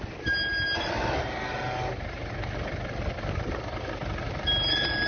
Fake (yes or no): no